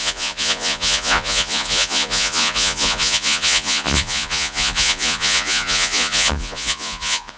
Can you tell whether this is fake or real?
fake